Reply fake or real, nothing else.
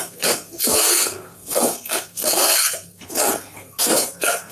fake